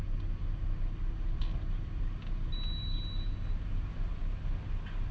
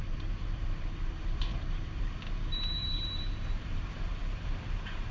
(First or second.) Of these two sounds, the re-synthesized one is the second